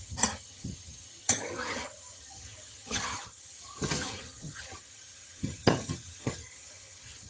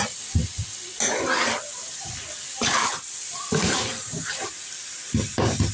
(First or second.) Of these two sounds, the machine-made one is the first